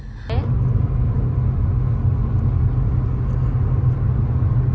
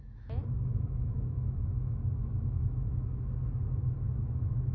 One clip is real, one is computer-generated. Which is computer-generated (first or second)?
second